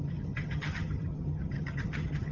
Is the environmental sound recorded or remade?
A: remade